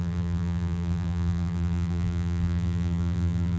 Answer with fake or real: fake